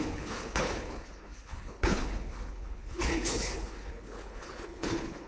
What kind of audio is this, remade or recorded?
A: remade